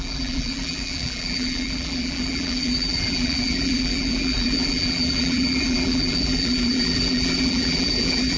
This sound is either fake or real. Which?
fake